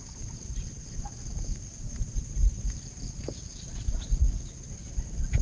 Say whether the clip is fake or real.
real